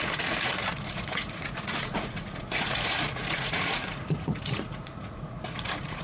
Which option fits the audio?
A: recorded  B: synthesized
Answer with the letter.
B